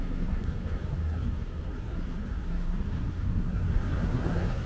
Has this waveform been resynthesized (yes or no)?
yes